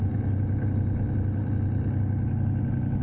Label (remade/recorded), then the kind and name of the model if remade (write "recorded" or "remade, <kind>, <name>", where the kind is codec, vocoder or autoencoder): recorded